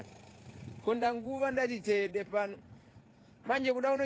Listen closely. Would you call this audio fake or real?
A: fake